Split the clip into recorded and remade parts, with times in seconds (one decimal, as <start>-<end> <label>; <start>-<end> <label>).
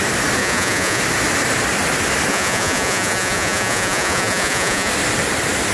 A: 0.0-0.4 recorded; 0.4-1.0 remade; 1.0-2.3 recorded; 2.3-4.9 remade; 4.9-5.7 recorded